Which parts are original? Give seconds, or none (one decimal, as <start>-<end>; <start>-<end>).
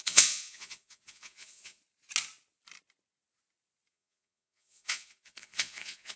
1.8-3.9